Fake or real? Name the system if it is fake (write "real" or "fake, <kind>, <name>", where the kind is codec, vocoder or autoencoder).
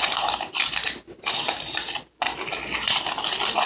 real